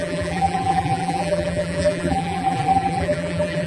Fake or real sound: fake